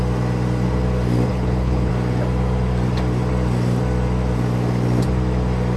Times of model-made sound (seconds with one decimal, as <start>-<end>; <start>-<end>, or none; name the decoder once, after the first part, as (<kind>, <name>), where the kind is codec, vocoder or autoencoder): 1.3-1.9 (codec, HILCodec)